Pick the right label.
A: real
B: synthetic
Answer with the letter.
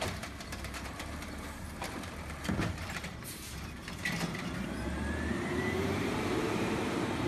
B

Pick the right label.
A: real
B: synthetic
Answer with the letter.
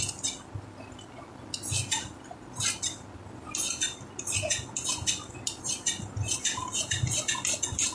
A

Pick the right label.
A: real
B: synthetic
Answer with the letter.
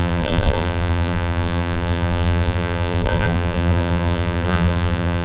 B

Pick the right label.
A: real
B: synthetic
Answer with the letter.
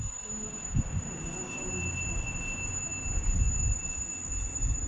A